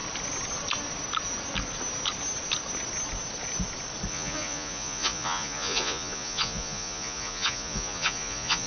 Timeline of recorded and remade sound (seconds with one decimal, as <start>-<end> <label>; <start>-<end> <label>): 0.0-4.1 recorded; 4.1-8.7 remade